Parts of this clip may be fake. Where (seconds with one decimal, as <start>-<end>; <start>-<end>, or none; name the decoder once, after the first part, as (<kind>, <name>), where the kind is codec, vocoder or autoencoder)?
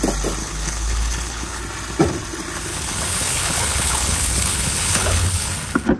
0.4-1.6 (codec, HILCodec); 2.7-5.5